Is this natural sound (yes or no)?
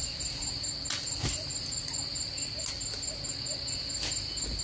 yes